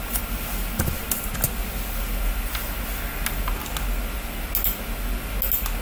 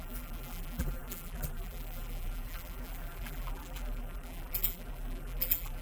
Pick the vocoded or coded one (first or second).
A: second